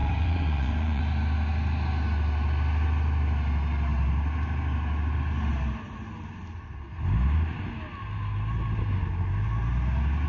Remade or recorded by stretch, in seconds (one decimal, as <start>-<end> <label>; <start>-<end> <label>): 0.0-1.0 remade; 1.0-10.3 recorded